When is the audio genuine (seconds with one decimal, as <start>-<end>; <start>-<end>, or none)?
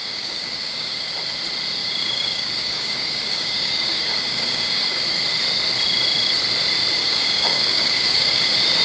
1.1-1.8; 5.0-7.0; 8.4-8.8